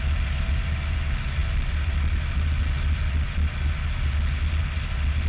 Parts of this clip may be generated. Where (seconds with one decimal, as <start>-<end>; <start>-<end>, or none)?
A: none